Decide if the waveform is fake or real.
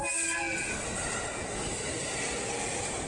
real